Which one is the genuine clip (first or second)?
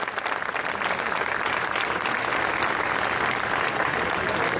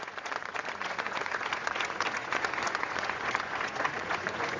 first